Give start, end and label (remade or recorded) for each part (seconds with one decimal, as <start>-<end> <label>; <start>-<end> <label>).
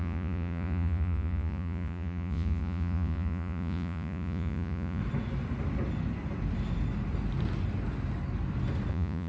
0.0-5.0 remade; 5.0-8.9 recorded; 8.9-9.3 remade